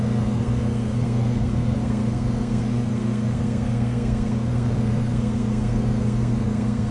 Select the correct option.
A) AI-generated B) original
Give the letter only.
A